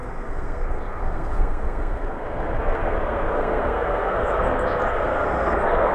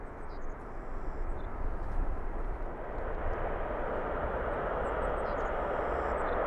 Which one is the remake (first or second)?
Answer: first